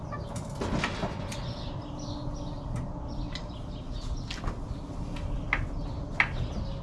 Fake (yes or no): no